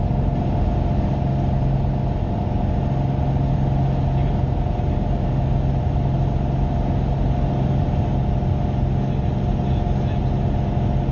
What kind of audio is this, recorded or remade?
recorded